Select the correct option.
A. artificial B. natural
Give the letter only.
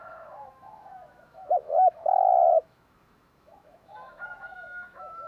A